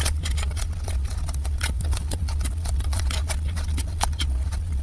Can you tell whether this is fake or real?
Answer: fake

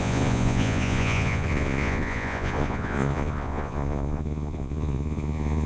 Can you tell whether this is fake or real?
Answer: fake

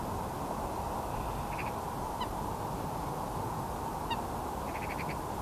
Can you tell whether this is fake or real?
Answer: real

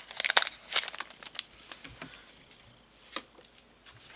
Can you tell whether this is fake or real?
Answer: real